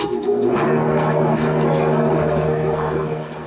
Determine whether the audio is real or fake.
fake